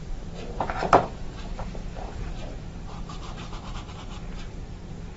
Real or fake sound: fake